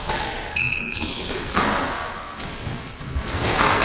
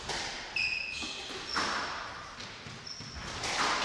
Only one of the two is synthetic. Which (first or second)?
first